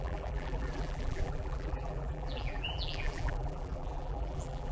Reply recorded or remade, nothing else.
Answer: remade